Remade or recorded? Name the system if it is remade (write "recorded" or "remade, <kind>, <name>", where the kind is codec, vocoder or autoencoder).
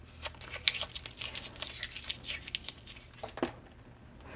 recorded